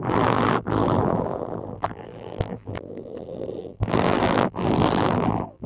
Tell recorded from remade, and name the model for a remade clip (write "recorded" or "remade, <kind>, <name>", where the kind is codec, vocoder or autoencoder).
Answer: remade, vocoder, BigVGAN v2